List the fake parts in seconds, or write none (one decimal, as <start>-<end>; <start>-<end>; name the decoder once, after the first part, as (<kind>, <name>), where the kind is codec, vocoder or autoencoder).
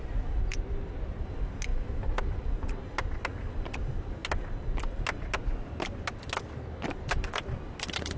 none